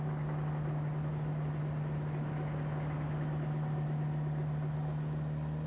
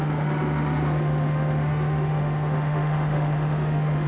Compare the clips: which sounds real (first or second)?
first